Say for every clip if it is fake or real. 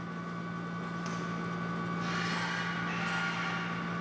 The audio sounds real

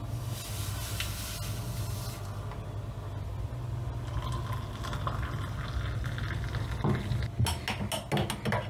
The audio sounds real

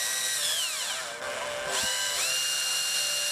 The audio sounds real